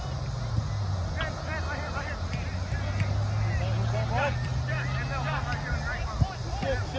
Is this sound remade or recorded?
recorded